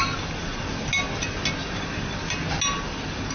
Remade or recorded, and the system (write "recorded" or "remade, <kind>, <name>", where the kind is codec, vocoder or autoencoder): recorded